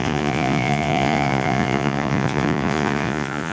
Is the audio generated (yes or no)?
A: yes